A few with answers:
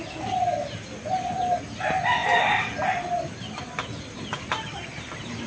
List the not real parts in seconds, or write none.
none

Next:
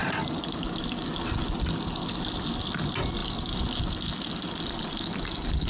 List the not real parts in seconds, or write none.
none

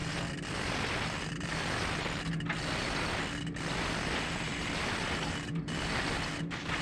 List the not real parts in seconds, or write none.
none

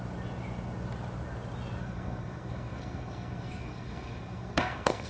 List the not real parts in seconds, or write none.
1.8-5.1 (codec, SNAC)

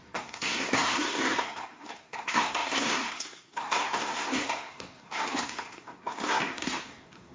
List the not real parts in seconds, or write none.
0.0-7.3 (codec, SNAC)

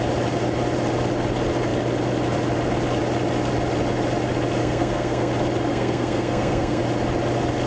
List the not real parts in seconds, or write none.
4.6-5.3 (codec, SNAC); 5.7-6.8

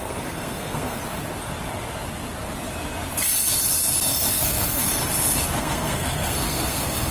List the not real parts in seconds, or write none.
0.0-1.0 (codec, SNAC); 4.3-5.0; 5.6-7.1